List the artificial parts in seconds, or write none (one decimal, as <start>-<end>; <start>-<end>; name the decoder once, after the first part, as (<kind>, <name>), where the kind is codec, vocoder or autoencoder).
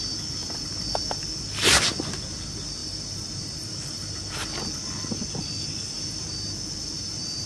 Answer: none